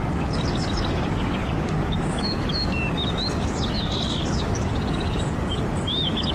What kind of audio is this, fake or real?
fake